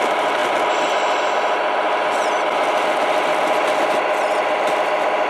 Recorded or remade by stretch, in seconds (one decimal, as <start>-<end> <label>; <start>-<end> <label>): 0.0-5.3 recorded